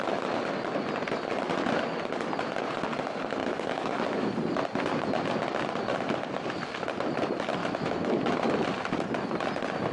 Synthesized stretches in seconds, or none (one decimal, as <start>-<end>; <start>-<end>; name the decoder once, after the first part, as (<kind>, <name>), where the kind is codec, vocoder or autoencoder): 3.4-4.3 (autoencoder, DAC-VAE); 7.6-8.2